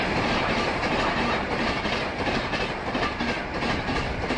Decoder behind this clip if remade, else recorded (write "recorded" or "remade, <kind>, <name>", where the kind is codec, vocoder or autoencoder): remade, vocoder, BigVGAN v2